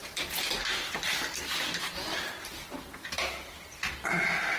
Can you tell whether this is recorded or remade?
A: recorded